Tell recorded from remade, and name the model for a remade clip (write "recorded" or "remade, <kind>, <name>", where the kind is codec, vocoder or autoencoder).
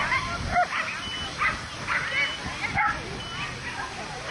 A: recorded